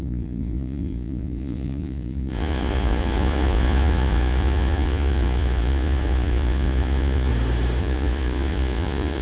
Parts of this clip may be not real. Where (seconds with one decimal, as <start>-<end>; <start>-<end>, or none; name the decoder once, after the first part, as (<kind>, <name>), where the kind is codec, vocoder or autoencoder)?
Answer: 0.0-7.3 (vocoder, Vocos); 7.8-9.2